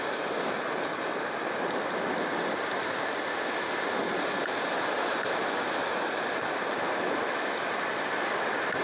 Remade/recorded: recorded